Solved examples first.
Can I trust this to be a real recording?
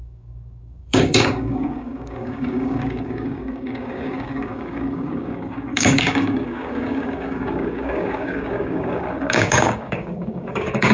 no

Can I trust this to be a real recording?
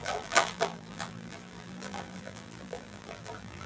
no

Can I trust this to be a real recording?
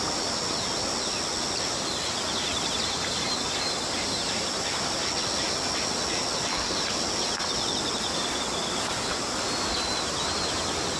yes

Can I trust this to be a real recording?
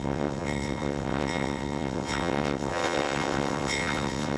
no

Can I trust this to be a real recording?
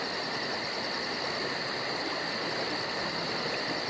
yes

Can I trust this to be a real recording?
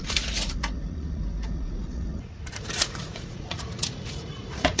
no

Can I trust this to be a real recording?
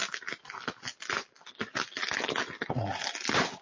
yes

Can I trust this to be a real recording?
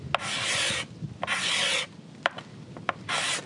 yes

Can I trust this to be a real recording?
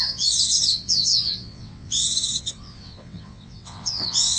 no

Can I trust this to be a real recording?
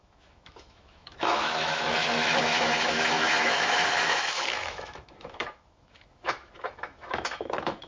no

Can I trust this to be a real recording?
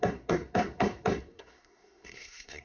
no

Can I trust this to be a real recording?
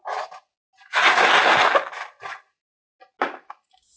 yes